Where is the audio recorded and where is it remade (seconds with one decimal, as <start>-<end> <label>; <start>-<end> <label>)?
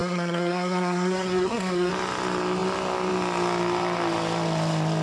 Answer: 0.0-1.9 remade; 1.9-5.0 recorded